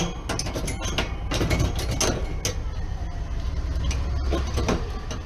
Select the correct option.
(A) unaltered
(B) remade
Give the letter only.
A